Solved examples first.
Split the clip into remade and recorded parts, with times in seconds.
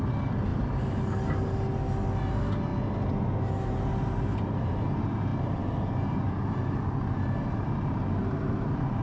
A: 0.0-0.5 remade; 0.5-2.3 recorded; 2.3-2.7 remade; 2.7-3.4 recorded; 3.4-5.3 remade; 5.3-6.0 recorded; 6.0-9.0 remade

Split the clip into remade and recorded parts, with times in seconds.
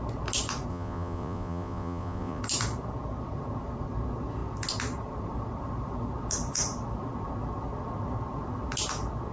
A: 0.0-0.7 recorded; 0.7-2.4 remade; 2.4-9.3 recorded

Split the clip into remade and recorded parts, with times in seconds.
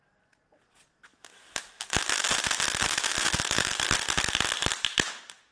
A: 0.0-1.1 recorded; 1.1-3.9 remade; 3.9-5.5 recorded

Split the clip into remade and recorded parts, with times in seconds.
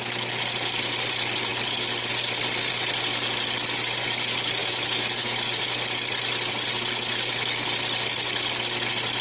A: 0.0-4.6 recorded; 4.6-5.6 remade; 5.6-9.2 recorded